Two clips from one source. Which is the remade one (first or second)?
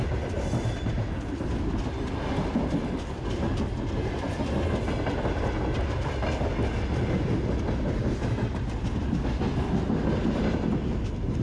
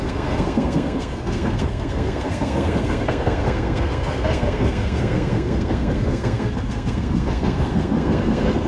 second